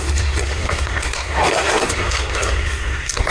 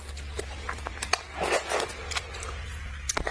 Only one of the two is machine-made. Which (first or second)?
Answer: first